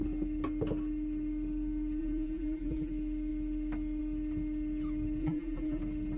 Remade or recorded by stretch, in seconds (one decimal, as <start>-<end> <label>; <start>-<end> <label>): 0.0-2.0 recorded; 2.0-2.9 remade; 2.9-5.2 recorded; 5.2-5.8 remade; 5.8-6.2 recorded